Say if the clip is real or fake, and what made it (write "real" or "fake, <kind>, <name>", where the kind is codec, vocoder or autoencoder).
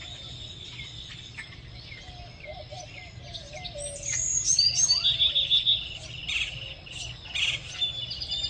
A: real